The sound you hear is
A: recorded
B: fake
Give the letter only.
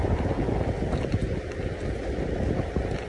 A